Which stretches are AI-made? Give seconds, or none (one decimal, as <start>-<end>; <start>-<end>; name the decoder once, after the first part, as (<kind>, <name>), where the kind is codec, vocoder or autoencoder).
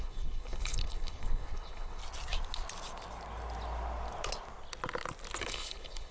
0.0-2.0 (codec, HILCodec); 5.4-6.1